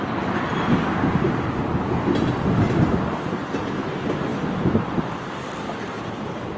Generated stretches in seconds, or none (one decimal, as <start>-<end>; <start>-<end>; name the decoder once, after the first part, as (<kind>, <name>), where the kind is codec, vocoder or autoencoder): none